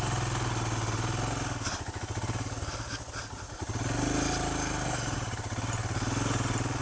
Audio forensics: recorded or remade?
recorded